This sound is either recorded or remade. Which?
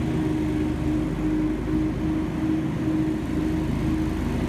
recorded